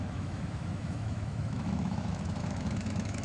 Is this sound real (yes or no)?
no